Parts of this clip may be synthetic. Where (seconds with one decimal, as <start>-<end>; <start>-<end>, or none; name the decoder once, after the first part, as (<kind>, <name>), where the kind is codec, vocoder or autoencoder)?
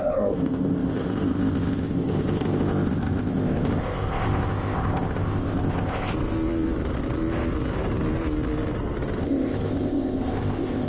0.0-6.1 (codec, ZipCodec); 9.2-10.9